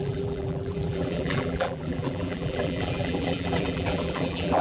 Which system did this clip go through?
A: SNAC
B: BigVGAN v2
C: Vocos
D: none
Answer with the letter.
B